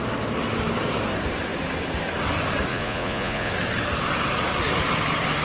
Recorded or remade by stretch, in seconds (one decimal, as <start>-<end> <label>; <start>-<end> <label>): 0.0-2.7 recorded; 2.7-3.5 remade; 3.5-5.4 recorded